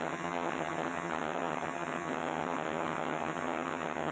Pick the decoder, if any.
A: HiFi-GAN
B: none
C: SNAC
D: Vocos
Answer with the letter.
A